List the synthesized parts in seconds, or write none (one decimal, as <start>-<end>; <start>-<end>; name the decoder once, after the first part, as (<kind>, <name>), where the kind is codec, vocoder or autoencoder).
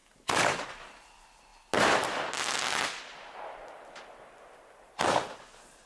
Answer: none